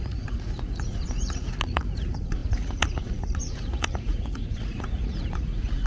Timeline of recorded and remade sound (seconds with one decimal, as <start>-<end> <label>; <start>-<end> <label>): 0.0-5.9 remade